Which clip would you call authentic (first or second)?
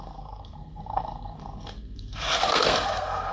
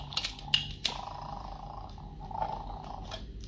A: second